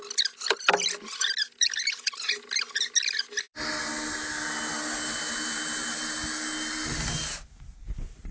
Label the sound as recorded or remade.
recorded